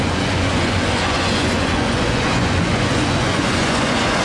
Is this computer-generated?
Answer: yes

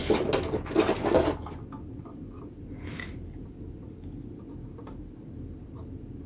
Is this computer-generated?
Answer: no